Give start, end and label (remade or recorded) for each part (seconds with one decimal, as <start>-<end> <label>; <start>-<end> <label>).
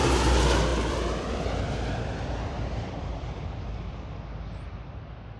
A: 0.0-0.7 recorded; 0.7-3.9 remade; 3.9-5.4 recorded